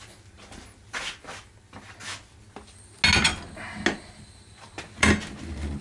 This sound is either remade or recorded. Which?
recorded